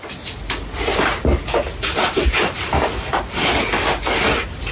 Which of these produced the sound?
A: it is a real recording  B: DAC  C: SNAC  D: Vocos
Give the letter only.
A